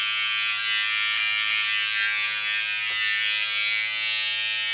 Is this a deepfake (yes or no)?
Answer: no